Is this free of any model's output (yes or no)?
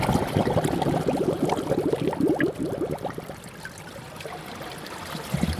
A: yes